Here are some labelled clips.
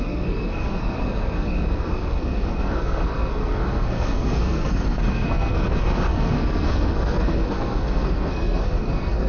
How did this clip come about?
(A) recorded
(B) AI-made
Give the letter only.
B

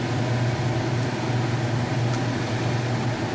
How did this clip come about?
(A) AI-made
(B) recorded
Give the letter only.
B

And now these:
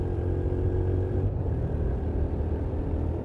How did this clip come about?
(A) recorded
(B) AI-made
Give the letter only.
B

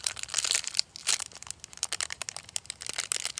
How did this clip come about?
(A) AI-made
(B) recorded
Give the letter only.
B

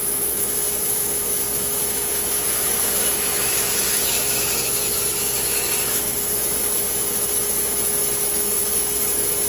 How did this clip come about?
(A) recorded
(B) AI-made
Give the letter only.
B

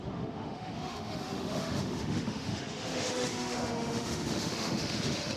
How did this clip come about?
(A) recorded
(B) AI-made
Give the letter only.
B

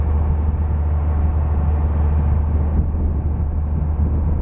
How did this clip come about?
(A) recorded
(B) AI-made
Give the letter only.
A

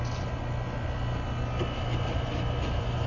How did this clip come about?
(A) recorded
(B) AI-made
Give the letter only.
A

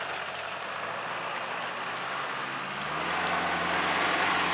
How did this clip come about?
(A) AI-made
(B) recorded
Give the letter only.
B